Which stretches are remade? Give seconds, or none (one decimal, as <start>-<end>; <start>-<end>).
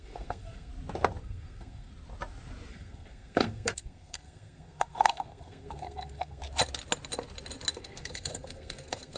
0.0-0.7; 1.2-1.9; 2.7-6.4; 7.7-9.2